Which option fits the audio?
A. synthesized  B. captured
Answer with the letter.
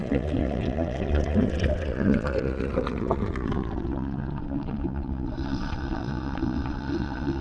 A